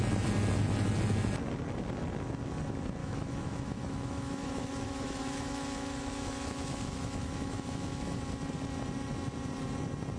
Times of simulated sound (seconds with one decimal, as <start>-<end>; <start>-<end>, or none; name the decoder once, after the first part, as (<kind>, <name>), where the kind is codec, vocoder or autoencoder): 3.0-8.2 (autoencoder, DAC-VAE)

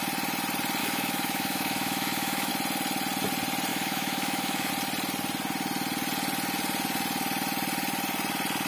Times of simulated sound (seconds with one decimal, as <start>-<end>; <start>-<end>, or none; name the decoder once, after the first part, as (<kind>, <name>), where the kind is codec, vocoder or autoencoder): 0.8-2.5 (autoencoder, DAC-VAE); 3.7-4.7

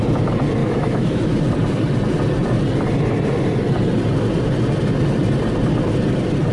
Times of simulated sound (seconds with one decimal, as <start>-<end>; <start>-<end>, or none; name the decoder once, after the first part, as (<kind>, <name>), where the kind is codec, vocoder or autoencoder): 0.6-1.4 (autoencoder, DAC-VAE)

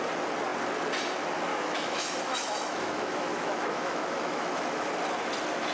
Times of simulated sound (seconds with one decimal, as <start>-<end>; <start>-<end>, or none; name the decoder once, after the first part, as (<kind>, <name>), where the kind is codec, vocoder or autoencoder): 1.5-4.9 (autoencoder, DAC-VAE)

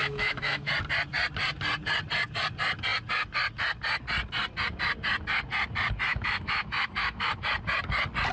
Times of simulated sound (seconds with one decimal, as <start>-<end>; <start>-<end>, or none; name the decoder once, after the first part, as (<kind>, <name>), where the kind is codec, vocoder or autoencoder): 0.0-0.7 (autoencoder, DAC-VAE); 6.1-7.3

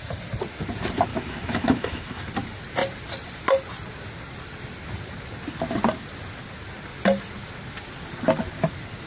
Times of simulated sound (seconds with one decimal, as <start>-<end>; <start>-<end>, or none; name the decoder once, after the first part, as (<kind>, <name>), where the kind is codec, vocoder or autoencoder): 1.1-2.3 (autoencoder, DAC-VAE)

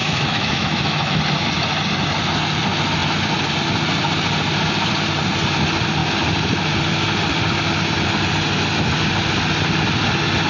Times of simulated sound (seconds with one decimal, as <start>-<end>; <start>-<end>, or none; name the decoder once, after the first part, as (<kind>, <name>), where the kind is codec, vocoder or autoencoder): 0.0-1.2 (autoencoder, DAC-VAE)

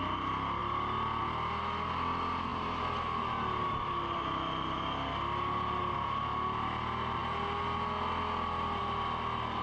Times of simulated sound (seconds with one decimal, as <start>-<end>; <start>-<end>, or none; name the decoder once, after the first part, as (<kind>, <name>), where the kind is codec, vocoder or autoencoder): none